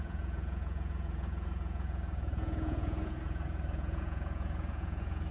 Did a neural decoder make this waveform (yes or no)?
yes